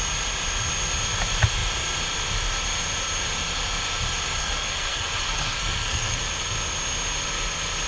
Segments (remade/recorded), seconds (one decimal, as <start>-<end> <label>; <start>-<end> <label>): 0.0-4.4 recorded; 4.4-6.2 remade; 6.2-7.9 recorded